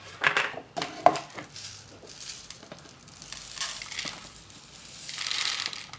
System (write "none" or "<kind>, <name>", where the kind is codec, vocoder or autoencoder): vocoder, BigVGAN v2